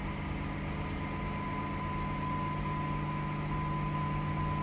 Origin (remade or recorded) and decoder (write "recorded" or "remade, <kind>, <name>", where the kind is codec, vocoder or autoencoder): recorded